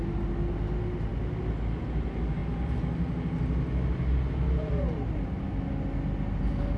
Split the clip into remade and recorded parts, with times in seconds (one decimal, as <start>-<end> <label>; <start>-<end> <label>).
0.0-6.8 recorded